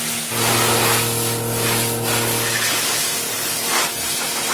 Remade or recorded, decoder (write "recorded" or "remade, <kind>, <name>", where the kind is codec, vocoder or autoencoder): recorded